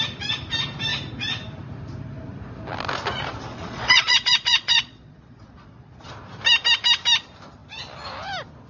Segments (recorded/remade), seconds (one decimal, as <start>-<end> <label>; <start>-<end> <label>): 0.0-3.5 recorded; 3.5-6.1 remade; 6.1-8.7 recorded